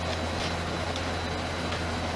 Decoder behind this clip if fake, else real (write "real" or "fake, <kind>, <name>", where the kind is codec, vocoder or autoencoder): real